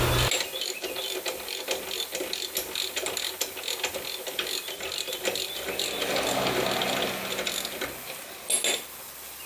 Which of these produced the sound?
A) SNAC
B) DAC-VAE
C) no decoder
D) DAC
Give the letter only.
C